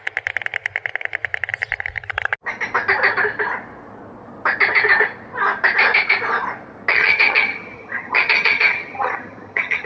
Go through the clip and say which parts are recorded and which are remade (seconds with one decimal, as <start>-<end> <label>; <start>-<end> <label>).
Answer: 0.0-6.9 recorded; 6.9-9.9 remade